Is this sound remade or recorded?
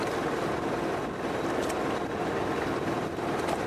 recorded